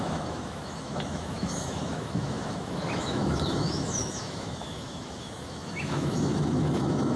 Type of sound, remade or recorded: remade